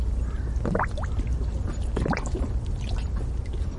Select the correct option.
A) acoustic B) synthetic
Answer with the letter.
A